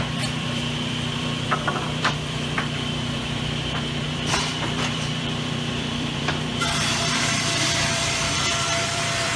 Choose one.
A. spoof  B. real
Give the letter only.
A